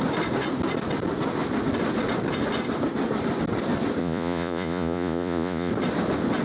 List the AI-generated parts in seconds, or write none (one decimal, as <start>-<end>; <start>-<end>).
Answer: 4.0-5.7